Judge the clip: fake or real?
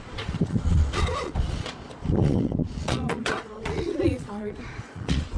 fake